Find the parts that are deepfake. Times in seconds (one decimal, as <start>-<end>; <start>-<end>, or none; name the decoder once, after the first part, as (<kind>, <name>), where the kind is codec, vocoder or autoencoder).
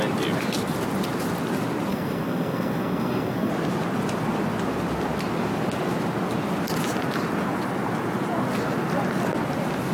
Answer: 1.9-3.5 (codec, SNAC)